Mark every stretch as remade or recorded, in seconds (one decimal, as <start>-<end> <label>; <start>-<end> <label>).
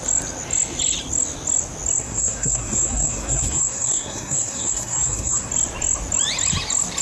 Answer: 0.0-2.0 recorded; 2.0-5.5 remade; 5.5-7.0 recorded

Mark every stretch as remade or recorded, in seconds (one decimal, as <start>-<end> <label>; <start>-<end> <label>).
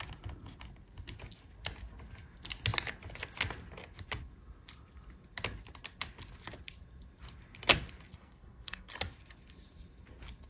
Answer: 0.0-8.1 recorded; 8.1-8.9 remade; 8.9-10.5 recorded